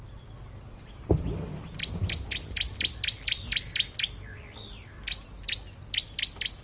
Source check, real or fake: real